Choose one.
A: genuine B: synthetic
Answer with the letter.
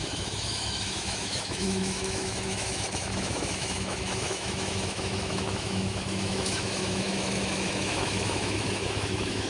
B